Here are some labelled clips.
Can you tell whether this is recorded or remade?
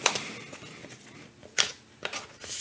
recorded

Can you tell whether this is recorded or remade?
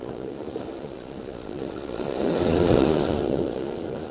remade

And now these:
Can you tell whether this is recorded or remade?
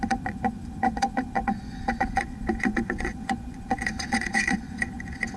remade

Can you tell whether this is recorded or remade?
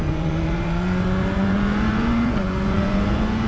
remade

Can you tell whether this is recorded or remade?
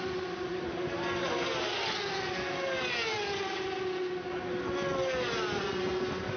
recorded